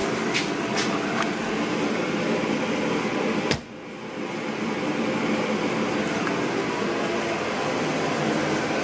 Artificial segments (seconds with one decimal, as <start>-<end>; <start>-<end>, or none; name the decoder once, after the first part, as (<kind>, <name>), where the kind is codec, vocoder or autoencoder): none